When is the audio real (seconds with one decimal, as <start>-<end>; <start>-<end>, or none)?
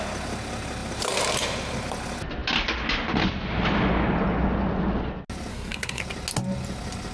0.0-5.5; 6.0-7.1